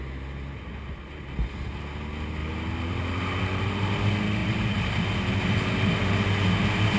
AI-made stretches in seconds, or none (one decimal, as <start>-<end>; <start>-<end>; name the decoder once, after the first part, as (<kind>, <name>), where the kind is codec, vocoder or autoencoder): 4.4-5.0 (vocoder, BigVGAN v2)